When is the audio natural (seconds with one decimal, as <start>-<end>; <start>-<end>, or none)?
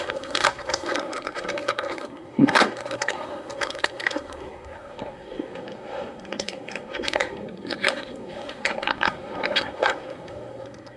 none